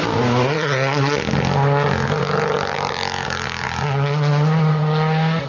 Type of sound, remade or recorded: recorded